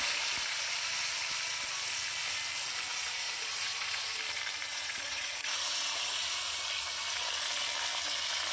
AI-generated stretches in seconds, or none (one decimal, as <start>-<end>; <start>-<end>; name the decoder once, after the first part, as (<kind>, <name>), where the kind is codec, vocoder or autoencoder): 2.9-4.2 (vocoder, Vocos); 4.7-6.6